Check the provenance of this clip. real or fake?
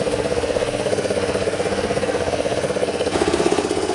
fake